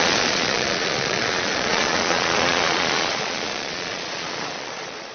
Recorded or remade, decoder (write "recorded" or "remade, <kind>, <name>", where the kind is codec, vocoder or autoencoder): remade, vocoder, Vocos